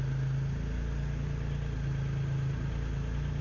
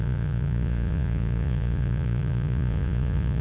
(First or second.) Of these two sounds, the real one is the first